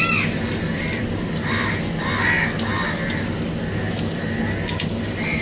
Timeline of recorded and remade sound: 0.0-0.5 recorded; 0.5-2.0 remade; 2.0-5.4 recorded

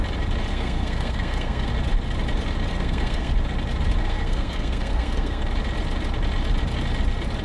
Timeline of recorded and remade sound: 0.0-0.5 recorded; 0.5-1.7 remade; 1.7-2.7 recorded; 2.7-3.3 remade; 3.3-4.0 recorded; 4.0-5.4 remade; 5.4-7.4 recorded

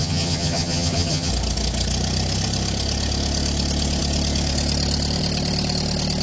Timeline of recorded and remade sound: 0.0-1.3 remade; 1.3-6.2 recorded

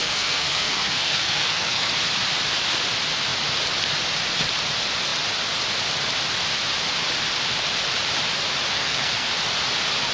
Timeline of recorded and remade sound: 0.0-1.9 remade; 1.9-8.7 recorded; 8.7-9.3 remade; 9.3-10.1 recorded

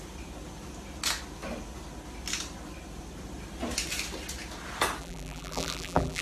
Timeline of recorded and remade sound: 0.0-5.0 recorded; 5.0-6.2 remade

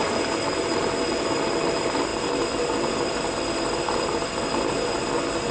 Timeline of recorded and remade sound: 0.0-5.5 recorded

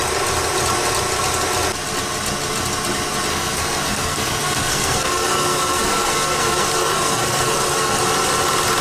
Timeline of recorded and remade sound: 0.0-3.3 recorded; 3.3-8.0 remade; 8.0-8.8 recorded

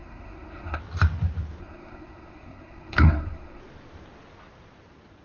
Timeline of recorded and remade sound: 0.0-0.8 remade; 0.8-1.6 recorded; 1.6-3.6 remade; 3.6-5.2 recorded